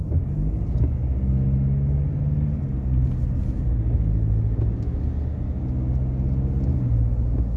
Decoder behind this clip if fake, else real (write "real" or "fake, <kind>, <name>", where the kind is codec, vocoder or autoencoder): real